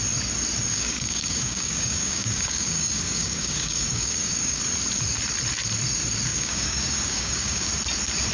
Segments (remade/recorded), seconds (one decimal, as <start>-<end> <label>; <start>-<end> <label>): 0.0-0.7 recorded; 0.7-4.6 remade; 4.6-6.3 recorded; 6.3-7.7 remade; 7.7-8.3 recorded

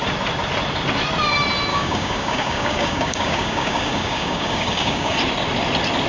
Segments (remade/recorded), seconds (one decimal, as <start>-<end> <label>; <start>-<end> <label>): 0.0-1.7 recorded; 1.7-5.2 remade; 5.2-6.1 recorded

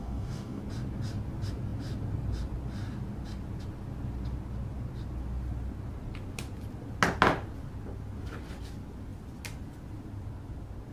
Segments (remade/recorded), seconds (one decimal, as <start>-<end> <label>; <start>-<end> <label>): 0.0-0.6 remade; 0.6-10.9 recorded

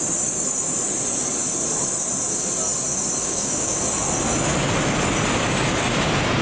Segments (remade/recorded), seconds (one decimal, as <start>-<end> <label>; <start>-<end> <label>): 0.0-3.2 recorded; 3.2-3.8 remade; 3.8-6.4 recorded

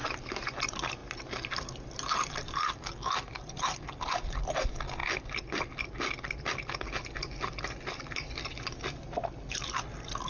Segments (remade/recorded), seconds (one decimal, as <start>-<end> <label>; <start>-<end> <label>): 0.0-10.3 recorded

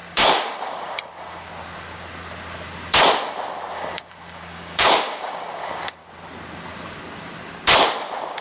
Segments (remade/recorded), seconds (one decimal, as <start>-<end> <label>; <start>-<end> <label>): 0.0-1.5 remade; 1.5-3.7 recorded; 3.7-6.0 remade; 6.0-8.4 recorded

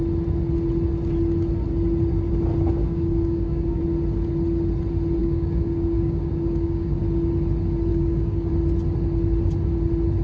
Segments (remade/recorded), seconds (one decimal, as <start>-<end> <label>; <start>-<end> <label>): 0.0-2.8 recorded; 2.8-3.8 remade; 3.8-5.2 recorded; 5.2-7.0 remade; 7.0-7.9 recorded; 7.9-8.5 remade; 8.5-10.2 recorded